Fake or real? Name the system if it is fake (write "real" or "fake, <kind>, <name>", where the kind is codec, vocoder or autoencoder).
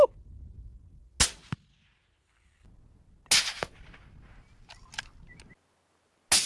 real